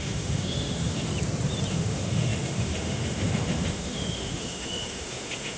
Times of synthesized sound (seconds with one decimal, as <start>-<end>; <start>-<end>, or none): 0.0-1.1; 1.7-5.6